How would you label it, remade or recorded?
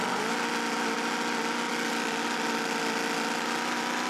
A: recorded